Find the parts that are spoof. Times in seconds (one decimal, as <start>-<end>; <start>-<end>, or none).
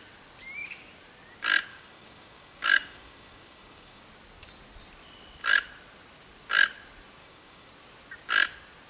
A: 1.7-4.0; 7.2-7.7